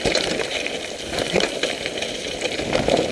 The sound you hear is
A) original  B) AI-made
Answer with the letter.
A